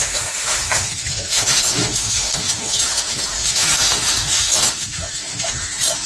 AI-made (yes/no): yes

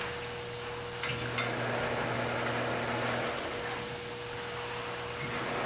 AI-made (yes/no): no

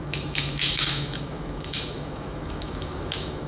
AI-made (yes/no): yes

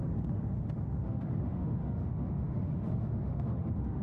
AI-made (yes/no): yes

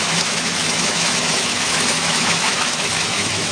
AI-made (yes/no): yes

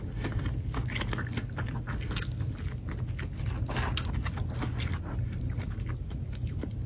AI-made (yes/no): no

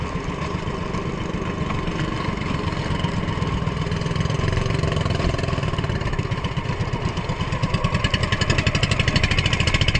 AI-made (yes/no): no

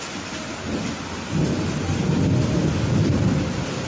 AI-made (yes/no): no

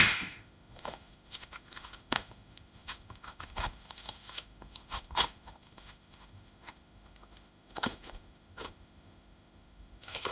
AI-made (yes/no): yes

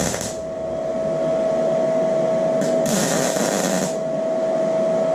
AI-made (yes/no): no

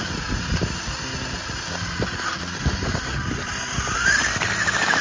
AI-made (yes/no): no